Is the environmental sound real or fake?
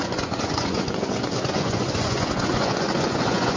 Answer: fake